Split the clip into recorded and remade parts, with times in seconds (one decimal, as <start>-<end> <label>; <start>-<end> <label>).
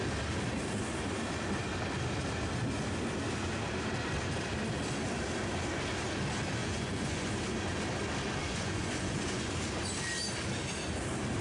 0.0-6.6 recorded; 6.6-7.3 remade; 7.3-8.4 recorded; 8.4-9.5 remade; 9.5-11.4 recorded